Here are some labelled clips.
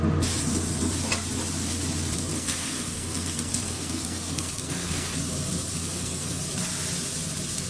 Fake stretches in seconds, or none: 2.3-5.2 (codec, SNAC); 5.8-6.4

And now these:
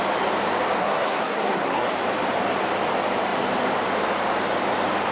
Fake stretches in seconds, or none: 0.8-1.9 (codec, SNAC)

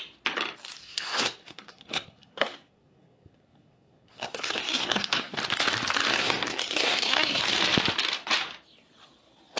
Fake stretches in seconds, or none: 0.8-5.4 (codec, SNAC); 6.1-7.4

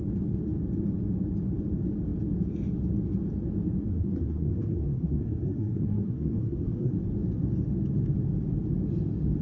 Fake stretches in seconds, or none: 3.9-6.9 (codec, SNAC)

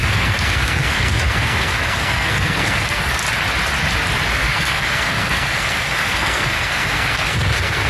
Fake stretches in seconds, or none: 0.0-3.2 (codec, SNAC); 4.3-7.9

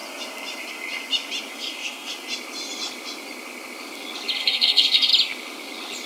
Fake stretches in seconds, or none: 1.5-2.1 (codec, SNAC); 4.4-5.1

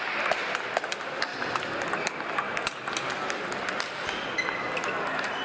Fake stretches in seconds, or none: none

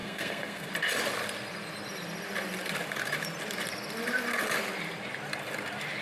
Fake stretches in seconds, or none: 0.0-0.7 (codec, SNAC)